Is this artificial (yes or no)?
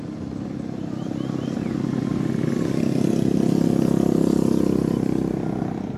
no